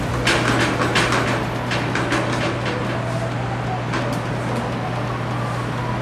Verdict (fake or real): real